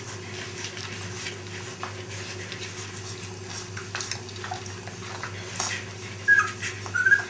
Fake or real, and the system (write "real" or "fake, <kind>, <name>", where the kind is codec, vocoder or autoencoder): real